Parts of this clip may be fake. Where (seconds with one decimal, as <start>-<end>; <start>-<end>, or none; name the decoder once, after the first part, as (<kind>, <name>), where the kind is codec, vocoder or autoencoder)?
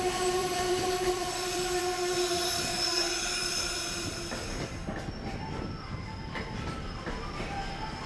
0.4-1.8 (vocoder, BigVGAN v2); 3.4-8.1